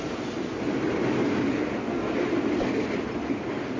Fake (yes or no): no